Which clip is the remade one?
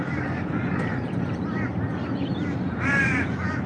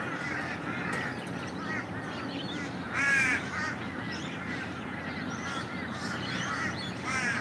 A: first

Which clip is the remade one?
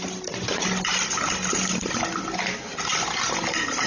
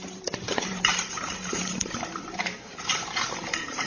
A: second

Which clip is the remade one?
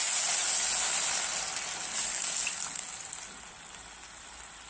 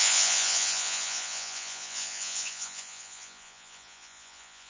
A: second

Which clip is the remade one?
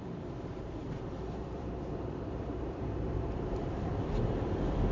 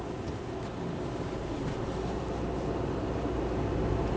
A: first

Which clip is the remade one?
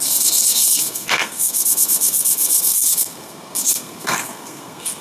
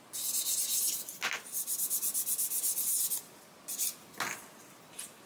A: first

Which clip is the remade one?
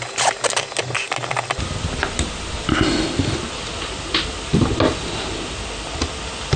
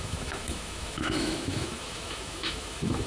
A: second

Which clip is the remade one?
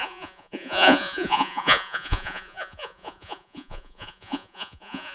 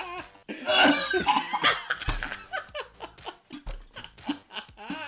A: first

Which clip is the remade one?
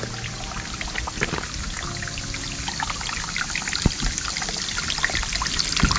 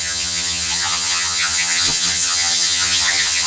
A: second